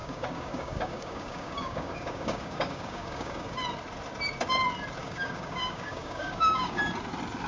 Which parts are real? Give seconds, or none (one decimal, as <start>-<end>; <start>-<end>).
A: 3.6-5.0; 6.8-7.5